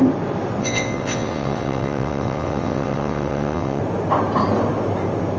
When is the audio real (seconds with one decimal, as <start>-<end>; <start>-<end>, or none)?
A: 0.0-0.6; 3.8-5.4